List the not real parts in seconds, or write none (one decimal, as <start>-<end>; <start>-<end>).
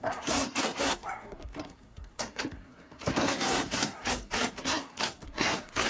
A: 0.0-5.9